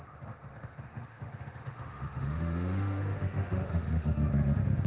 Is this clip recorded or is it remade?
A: remade